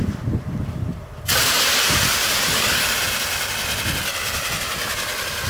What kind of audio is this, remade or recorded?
remade